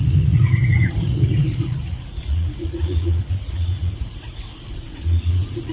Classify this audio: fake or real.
fake